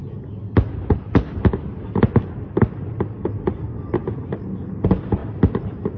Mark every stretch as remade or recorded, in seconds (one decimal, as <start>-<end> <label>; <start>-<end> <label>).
0.0-6.0 recorded